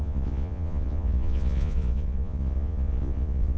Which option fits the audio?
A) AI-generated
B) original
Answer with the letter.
A